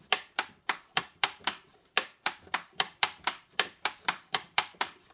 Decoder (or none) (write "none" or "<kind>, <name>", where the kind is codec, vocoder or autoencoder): vocoder, BigVGAN v2